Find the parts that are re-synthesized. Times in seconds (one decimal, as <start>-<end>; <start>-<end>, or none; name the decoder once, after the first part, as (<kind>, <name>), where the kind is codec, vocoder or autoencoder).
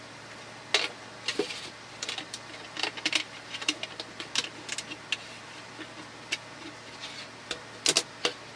1.3-3.8 (vocoder, BigVGAN v2)